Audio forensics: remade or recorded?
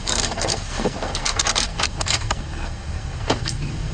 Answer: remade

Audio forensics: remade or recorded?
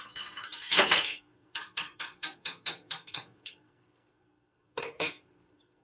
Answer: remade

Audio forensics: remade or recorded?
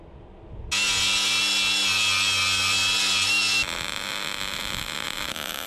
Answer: recorded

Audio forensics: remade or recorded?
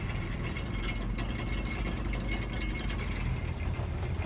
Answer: recorded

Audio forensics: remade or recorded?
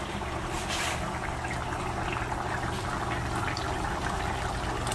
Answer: recorded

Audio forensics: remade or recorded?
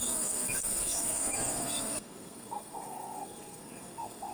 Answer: remade